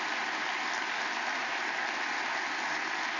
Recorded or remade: recorded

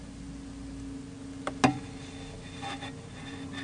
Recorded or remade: recorded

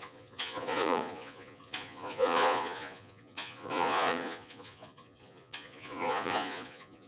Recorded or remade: remade